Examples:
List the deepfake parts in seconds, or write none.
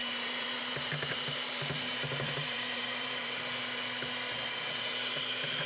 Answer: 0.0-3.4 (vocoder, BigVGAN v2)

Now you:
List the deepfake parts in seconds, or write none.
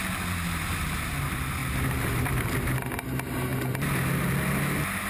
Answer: 1.6-2.3 (vocoder, BigVGAN v2)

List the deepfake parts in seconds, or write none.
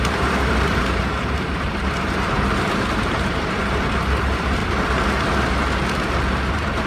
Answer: 0.0-4.6 (vocoder, BigVGAN v2); 6.5-6.9